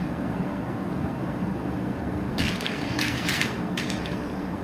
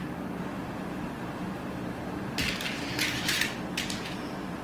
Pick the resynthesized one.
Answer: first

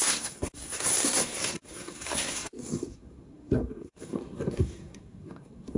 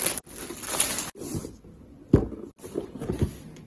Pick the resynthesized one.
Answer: first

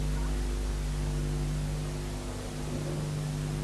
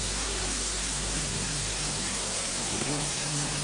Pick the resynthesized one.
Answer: second